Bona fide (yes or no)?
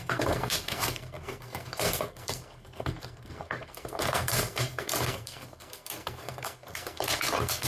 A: no